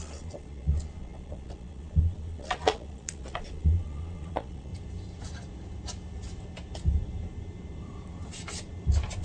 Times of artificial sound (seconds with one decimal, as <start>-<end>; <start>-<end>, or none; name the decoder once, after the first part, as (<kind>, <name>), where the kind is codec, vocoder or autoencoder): 0.0-4.7 (vocoder, Vocos)